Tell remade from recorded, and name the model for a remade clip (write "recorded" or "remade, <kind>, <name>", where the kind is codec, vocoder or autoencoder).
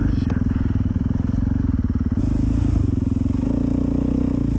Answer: recorded